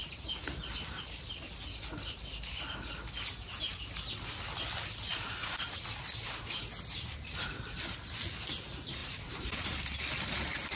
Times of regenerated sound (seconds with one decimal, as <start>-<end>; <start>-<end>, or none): 5.1-5.7; 9.0-9.8